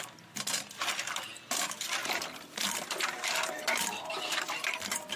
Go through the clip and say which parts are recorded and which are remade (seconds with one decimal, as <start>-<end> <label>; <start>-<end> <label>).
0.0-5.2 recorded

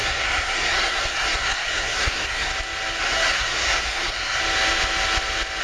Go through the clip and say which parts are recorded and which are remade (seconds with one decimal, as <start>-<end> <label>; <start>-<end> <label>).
0.0-2.5 remade; 2.5-3.0 recorded; 3.0-4.4 remade; 4.4-5.6 recorded

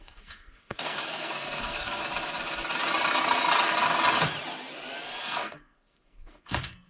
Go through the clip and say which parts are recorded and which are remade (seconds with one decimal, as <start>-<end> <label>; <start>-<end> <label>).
0.0-2.0 remade; 2.0-5.2 recorded; 5.2-6.9 remade